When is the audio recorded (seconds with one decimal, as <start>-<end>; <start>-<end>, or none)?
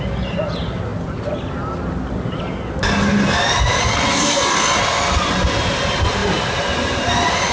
0.0-7.5